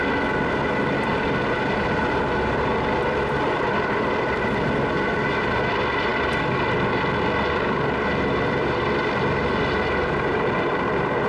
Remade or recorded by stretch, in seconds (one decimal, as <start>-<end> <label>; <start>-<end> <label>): 0.0-1.1 recorded; 1.1-5.5 remade; 5.5-6.1 recorded; 6.1-7.2 remade; 7.2-11.3 recorded